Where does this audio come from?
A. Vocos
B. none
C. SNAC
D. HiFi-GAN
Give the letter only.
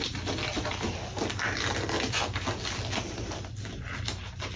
B